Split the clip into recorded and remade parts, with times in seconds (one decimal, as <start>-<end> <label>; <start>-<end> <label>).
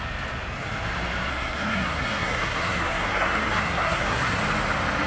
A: 0.0-1.3 recorded; 1.3-4.4 remade; 4.4-5.1 recorded